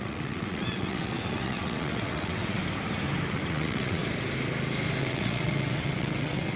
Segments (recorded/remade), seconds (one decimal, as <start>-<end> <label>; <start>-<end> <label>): 0.0-2.6 remade; 2.6-3.3 recorded; 3.3-4.0 remade; 4.0-5.0 recorded; 5.0-6.6 remade